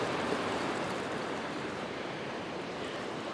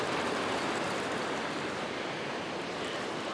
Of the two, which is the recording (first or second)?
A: second